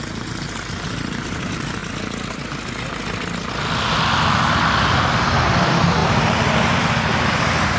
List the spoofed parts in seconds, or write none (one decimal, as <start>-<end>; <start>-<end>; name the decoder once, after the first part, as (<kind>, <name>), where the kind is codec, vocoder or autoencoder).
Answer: 0.0-1.8 (vocoder, BigVGAN v2); 5.1-7.8